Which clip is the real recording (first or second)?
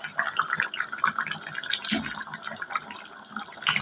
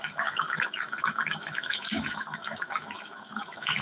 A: first